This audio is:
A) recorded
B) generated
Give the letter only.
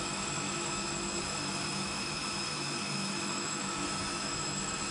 B